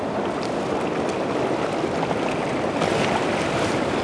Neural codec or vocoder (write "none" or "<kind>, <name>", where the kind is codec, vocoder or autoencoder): none